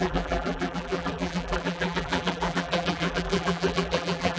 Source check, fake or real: fake